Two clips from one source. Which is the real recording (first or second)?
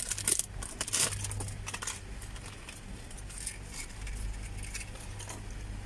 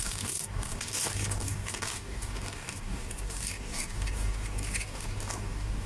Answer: first